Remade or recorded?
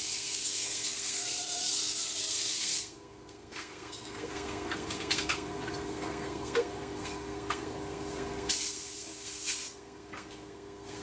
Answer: remade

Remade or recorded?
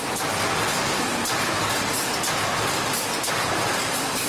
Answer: recorded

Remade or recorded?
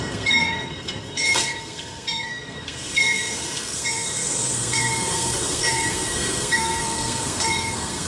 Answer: remade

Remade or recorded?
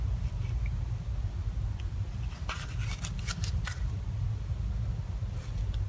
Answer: recorded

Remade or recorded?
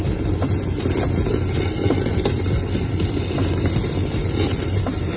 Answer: recorded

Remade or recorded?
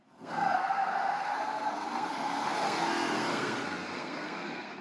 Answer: remade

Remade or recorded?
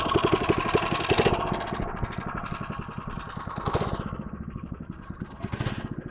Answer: recorded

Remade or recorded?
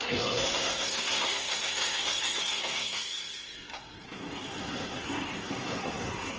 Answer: remade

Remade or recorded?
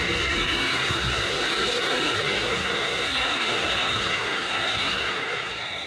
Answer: remade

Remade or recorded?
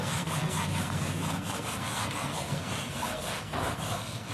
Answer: remade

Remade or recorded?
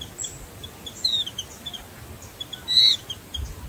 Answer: recorded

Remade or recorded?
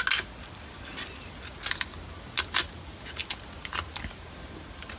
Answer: recorded